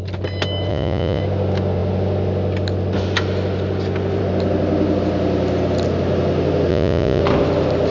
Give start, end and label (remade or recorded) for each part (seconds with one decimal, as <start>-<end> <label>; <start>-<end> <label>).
0.0-0.7 recorded; 0.7-1.2 remade; 1.2-6.7 recorded; 6.7-7.2 remade; 7.2-7.9 recorded